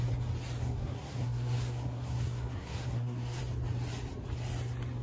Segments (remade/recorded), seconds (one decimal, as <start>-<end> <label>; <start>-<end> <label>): 0.0-0.6 recorded; 0.6-3.4 remade; 3.4-5.0 recorded